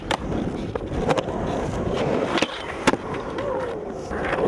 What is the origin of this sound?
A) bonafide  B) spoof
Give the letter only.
B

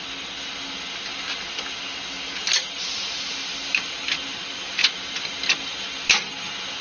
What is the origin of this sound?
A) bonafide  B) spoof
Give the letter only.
A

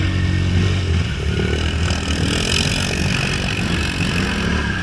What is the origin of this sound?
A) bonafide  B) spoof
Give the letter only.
A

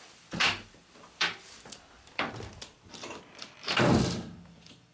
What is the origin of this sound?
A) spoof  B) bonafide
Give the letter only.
A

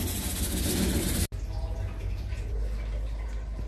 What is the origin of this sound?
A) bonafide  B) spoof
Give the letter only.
A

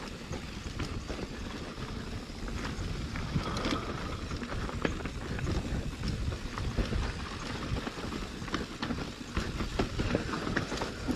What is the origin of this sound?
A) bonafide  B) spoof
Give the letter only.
A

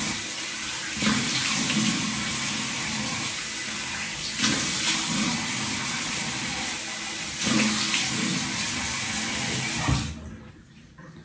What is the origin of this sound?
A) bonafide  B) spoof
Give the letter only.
A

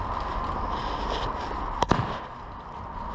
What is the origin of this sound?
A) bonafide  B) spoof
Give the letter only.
A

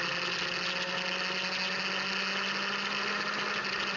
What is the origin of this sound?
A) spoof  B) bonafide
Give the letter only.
B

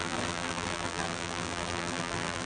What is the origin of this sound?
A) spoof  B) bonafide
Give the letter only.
A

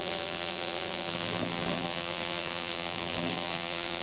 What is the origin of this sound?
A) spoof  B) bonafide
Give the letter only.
A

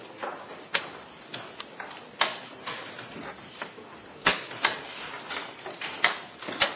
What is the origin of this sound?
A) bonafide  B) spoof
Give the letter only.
B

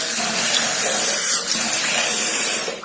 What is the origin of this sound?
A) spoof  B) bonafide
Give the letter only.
B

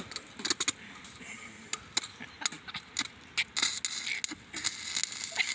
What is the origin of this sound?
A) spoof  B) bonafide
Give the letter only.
B